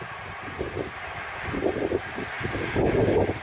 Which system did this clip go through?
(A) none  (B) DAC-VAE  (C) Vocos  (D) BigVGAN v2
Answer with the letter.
D